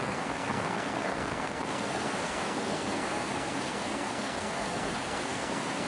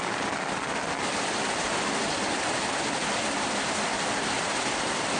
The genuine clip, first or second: second